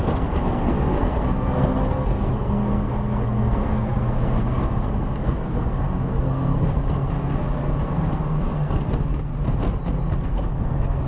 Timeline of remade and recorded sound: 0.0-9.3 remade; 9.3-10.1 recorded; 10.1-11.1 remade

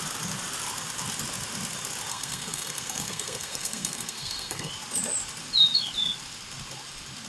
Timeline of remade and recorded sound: 0.0-2.1 recorded; 2.1-4.7 remade; 4.7-7.3 recorded

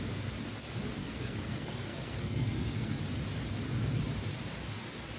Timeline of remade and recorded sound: 0.0-1.0 recorded; 1.0-3.0 remade; 3.0-5.2 recorded

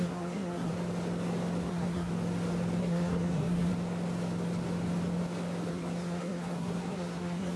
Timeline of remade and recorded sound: 0.0-0.7 remade; 0.7-1.7 recorded; 1.7-2.1 remade; 2.1-2.8 recorded; 2.8-3.7 remade; 3.7-5.7 recorded; 5.7-7.6 remade

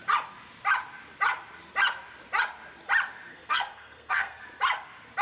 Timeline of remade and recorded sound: 0.0-3.3 recorded; 3.3-4.4 remade; 4.4-5.2 recorded

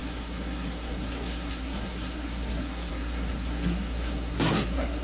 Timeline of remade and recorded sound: 0.0-5.0 remade